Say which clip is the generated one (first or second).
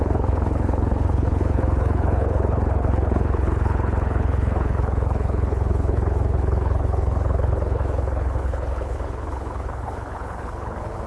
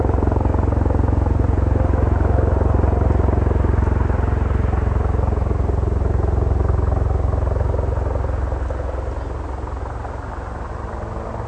first